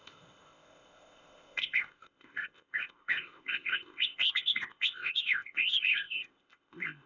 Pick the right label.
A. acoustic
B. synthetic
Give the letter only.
B